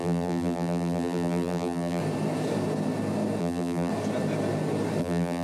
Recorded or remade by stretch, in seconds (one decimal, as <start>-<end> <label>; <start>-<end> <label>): 0.0-2.0 remade; 2.0-3.4 recorded; 3.4-3.9 remade; 3.9-5.0 recorded; 5.0-5.4 remade